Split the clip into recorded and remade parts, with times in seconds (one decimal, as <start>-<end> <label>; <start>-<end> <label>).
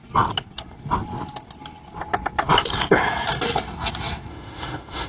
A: 0.0-4.3 recorded; 4.3-5.1 remade